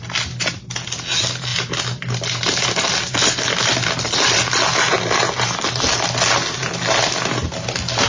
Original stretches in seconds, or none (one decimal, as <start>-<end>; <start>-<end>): 0.0-8.1